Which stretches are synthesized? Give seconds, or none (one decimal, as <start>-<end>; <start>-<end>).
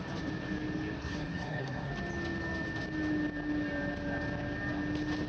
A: 1.0-1.9